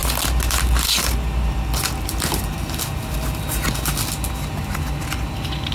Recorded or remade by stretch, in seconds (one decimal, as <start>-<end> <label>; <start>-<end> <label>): 0.0-5.7 recorded